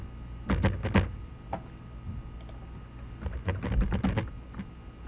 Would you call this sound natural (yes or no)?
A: yes